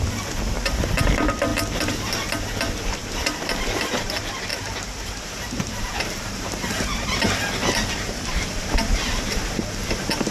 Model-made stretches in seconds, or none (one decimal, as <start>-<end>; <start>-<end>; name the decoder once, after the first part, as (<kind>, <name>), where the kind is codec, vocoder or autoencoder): 4.5-9.6 (vocoder, BigVGAN v2)